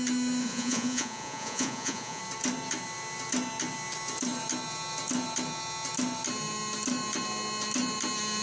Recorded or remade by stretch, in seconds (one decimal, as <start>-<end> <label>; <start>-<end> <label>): 0.0-0.4 recorded; 0.4-2.2 remade; 2.2-8.4 recorded